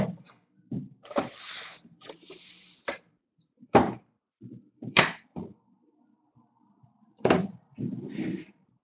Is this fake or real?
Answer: fake